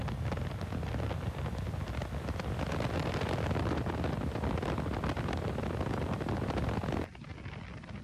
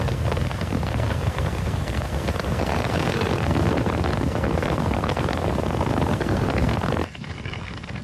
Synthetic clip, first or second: second